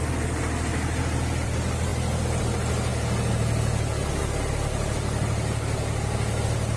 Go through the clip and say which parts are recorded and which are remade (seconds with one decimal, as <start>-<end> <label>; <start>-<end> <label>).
0.0-6.8 recorded